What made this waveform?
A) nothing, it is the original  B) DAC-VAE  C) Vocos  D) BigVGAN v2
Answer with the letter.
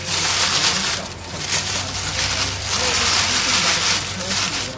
A